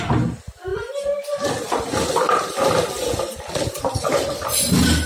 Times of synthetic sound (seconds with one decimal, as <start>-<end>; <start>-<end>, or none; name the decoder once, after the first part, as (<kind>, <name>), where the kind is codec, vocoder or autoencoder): none